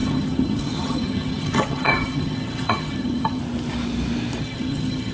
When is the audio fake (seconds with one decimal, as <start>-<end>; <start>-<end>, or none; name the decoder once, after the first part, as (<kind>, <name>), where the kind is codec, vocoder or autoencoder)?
0.0-3.4 (vocoder, HiFi-GAN); 4.4-5.1